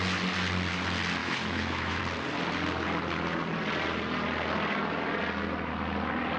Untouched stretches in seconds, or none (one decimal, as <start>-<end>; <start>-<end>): 0.0-1.2; 2.0-6.4